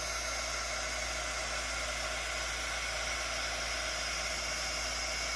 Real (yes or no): yes